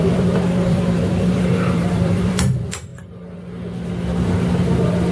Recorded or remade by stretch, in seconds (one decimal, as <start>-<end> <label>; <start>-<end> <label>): 0.0-2.9 remade; 2.9-5.1 recorded